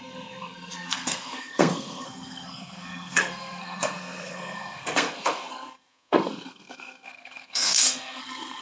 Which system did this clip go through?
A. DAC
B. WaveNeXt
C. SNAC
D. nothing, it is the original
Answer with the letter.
C